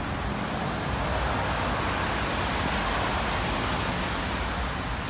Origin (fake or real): real